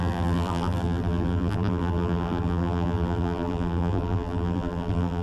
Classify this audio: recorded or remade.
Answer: remade